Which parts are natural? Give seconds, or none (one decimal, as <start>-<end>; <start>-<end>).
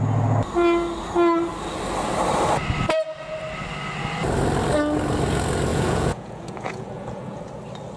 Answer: 0.0-5.7; 7.4-8.0